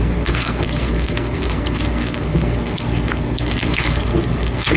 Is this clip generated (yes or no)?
yes